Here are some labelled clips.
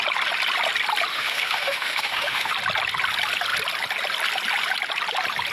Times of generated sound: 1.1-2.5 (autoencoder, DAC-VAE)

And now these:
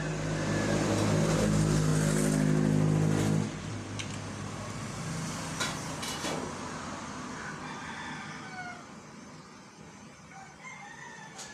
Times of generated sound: none

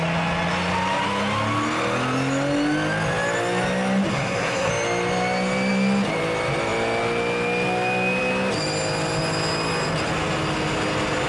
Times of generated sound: 4.1-4.7 (codec, SNAC)